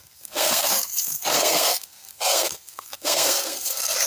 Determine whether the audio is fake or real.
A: fake